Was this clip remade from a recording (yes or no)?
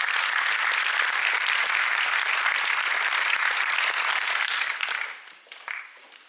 yes